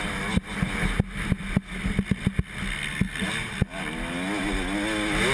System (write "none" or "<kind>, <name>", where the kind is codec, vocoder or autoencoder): none